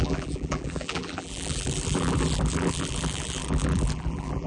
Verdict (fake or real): fake